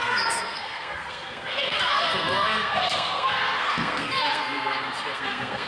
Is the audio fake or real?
fake